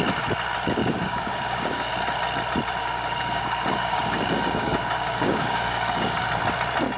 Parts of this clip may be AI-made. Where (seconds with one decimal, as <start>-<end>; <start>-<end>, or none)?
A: 0.8-1.9; 2.8-6.3